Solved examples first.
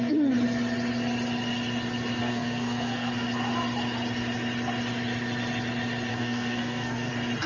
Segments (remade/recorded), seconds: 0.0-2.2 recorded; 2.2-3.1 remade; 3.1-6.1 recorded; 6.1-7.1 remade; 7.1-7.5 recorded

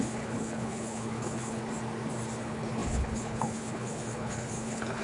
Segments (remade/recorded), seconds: 0.0-1.6 remade; 1.6-2.4 recorded; 2.4-5.0 remade

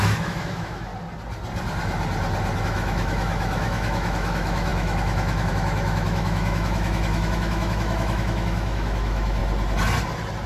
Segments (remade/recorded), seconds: 0.0-0.9 remade; 0.9-2.6 recorded; 2.6-9.4 remade; 9.4-10.5 recorded

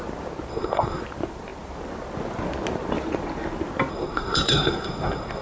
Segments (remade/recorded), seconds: 0.0-0.5 recorded; 0.5-1.0 remade; 1.0-3.9 recorded; 3.9-5.4 remade

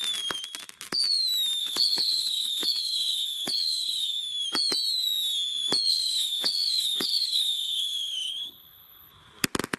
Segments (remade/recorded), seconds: 0.0-1.6 recorded; 1.6-4.2 remade; 4.2-5.9 recorded; 5.9-9.1 remade; 9.1-9.8 recorded

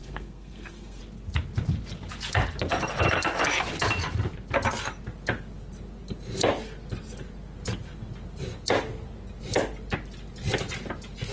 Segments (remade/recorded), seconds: 0.0-1.0 remade; 1.0-11.3 recorded

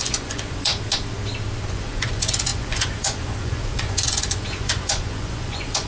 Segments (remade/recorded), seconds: 0.0-0.7 remade; 0.7-1.7 recorded; 1.7-5.9 remade

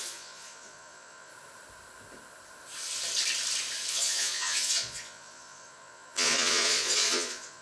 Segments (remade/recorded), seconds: 0.0-1.3 remade; 1.3-3.9 recorded; 3.9-7.6 remade